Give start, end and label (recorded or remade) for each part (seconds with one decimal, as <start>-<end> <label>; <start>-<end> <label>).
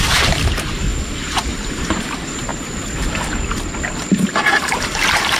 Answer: 0.0-2.5 remade; 2.5-4.3 recorded; 4.3-5.4 remade